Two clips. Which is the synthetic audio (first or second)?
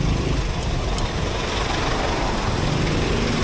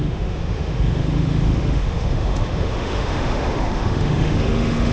second